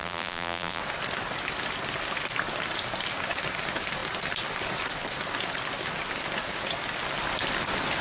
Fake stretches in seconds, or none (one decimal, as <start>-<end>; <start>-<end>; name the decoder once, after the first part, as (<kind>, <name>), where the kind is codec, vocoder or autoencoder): 0.0-0.8 (vocoder, BigVGAN v2)

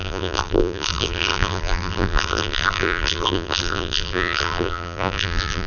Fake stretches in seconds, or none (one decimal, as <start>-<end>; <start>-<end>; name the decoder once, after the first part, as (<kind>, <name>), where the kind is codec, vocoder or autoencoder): 0.0-5.7 (vocoder, BigVGAN v2)